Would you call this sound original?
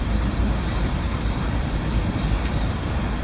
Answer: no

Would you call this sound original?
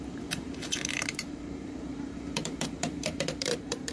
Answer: no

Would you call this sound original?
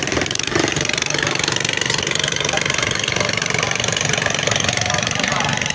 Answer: no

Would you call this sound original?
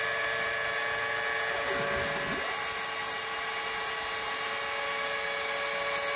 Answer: yes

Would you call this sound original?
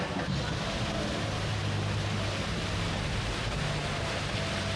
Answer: yes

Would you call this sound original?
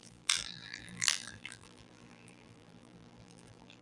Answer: no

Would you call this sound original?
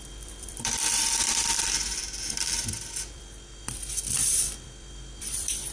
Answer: no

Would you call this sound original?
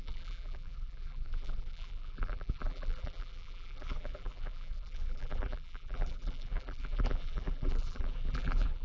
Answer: no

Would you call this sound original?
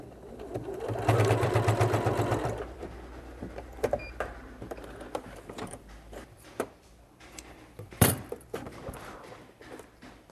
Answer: no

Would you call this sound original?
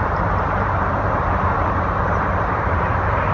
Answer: no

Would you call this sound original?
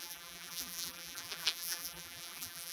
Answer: no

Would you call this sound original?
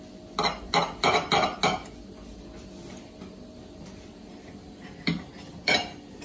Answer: yes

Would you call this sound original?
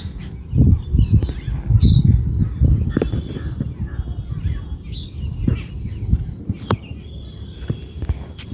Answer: yes